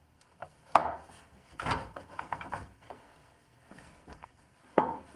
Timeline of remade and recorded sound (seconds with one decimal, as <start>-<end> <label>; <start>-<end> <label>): 0.0-5.2 remade